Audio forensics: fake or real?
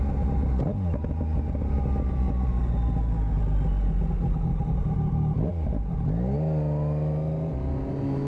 real